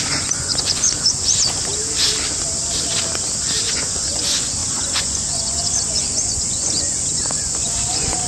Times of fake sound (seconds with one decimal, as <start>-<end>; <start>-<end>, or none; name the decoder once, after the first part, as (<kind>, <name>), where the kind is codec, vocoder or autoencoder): 0.0-1.7 (vocoder, Vocos); 3.6-8.3